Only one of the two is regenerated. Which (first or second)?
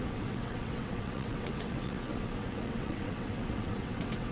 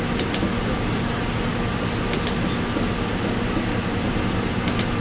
first